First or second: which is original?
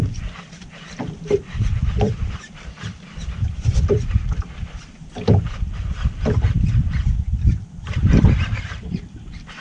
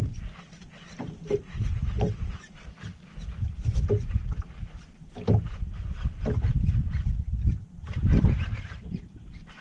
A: second